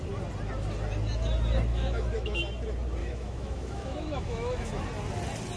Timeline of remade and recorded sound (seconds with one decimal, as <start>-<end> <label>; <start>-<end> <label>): 0.0-1.7 recorded; 1.7-2.4 remade; 2.4-3.0 recorded; 3.0-4.8 remade; 4.8-5.6 recorded